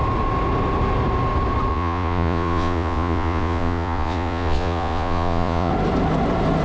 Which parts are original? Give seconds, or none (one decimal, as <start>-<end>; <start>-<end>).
0.0-1.7; 5.7-6.6